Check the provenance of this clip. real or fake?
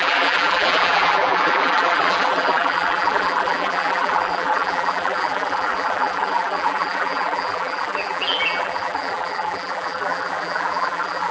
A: fake